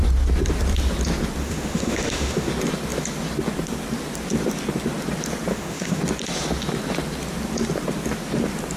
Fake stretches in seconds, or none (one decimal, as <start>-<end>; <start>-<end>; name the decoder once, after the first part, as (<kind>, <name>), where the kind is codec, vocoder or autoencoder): 1.4-2.5 (autoencoder, DAC-VAE); 5.5-6.0